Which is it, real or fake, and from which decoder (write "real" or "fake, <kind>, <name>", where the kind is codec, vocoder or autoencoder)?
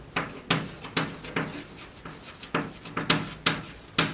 real